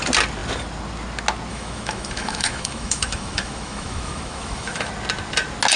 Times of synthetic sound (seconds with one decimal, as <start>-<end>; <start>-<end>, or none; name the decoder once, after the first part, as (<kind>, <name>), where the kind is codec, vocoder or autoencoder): 1.5-4.9 (autoencoder, DAC-VAE)